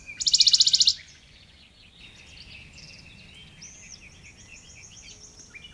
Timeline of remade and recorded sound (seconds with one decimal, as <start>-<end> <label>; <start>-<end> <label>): 0.0-0.9 recorded; 0.9-2.0 remade; 2.0-4.5 recorded; 4.5-5.1 remade; 5.1-5.7 recorded